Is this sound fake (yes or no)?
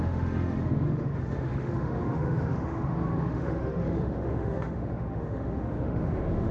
yes